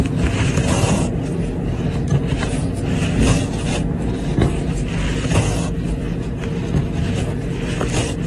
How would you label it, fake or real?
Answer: real